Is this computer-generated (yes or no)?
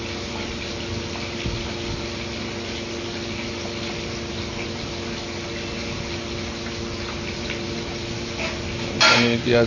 no